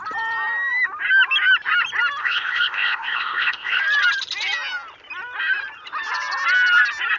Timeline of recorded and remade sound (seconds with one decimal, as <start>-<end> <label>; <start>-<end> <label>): 0.0-2.2 recorded; 2.2-3.8 remade; 3.8-7.2 recorded